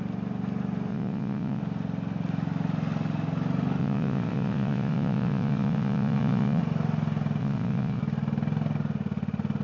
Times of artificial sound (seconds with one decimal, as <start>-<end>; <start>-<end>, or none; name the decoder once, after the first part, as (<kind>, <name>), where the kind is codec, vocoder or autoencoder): 0.9-1.6 (vocoder, Vocos); 3.8-6.6; 7.4-8.0